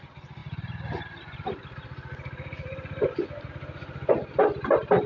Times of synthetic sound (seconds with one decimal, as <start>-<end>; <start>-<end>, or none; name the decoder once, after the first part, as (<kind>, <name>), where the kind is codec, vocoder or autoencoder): none